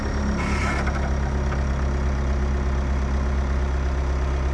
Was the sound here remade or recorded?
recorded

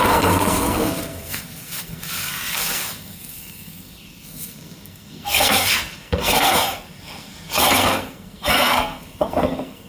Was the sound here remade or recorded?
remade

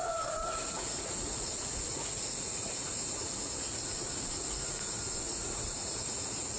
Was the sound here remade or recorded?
remade